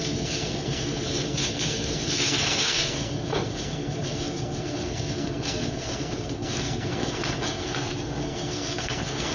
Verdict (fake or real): fake